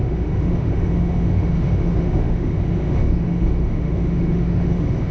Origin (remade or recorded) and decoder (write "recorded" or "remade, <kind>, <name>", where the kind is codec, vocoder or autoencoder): remade, autoencoder, DAC-VAE